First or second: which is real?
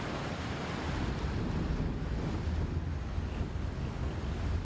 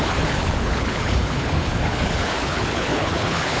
first